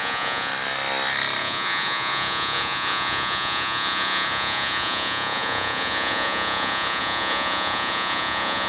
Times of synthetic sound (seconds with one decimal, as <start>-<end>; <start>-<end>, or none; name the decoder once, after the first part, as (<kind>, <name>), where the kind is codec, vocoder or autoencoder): 0.0-0.5 (vocoder, Vocos); 1.4-8.7